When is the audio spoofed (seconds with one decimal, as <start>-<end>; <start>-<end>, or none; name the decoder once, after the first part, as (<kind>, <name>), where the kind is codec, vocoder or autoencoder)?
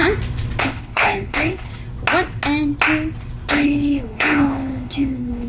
0.6-1.7 (codec, HILCodec); 3.5-5.5